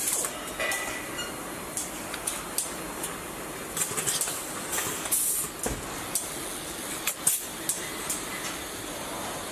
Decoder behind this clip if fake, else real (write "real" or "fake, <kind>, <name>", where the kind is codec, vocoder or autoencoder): real